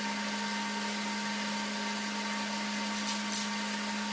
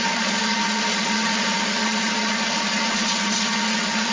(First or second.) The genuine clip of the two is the first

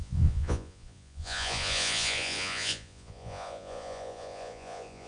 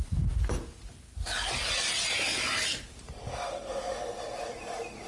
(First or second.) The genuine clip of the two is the second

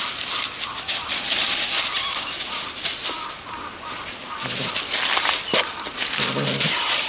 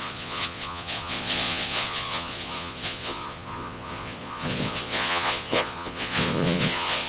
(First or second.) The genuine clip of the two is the first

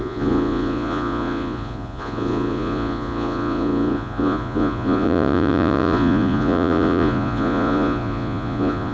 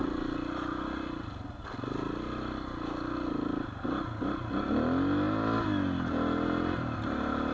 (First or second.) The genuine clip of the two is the second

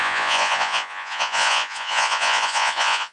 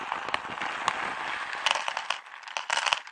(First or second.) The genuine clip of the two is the second